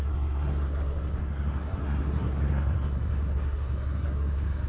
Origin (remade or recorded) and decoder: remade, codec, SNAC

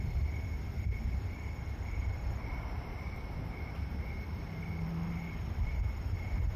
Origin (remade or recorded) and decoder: remade, vocoder, BigVGAN v2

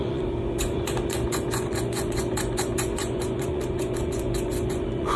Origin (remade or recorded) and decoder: remade, vocoder, Vocos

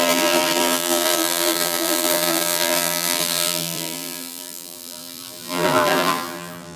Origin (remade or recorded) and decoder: remade, vocoder, BigVGAN v2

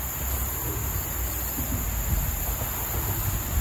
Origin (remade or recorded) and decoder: recorded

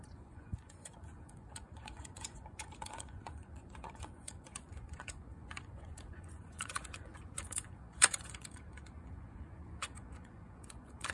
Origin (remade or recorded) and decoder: remade, vocoder, Vocos